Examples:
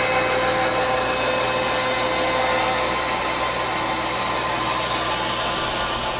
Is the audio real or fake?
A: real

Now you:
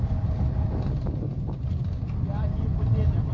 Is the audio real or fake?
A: real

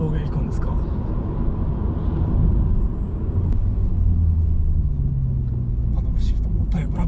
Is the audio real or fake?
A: real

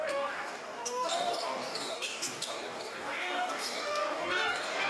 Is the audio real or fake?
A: fake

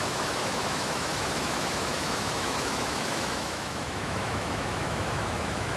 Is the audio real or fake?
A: fake